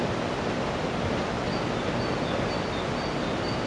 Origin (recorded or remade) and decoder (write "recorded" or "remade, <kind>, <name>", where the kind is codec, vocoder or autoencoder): recorded